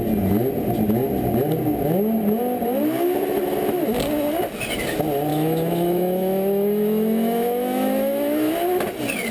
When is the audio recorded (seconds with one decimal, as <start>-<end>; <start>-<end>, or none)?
0.0-5.3; 8.5-9.3